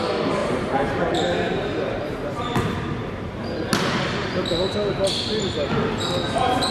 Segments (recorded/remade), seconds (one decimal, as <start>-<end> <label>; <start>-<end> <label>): 0.0-0.4 recorded; 0.4-3.3 remade; 3.3-6.7 recorded